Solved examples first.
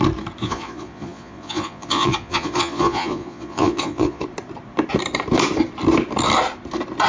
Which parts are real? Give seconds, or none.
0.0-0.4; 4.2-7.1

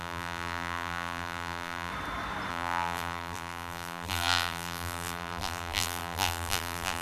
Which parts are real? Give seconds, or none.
1.9-2.5